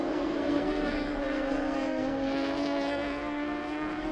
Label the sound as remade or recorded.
remade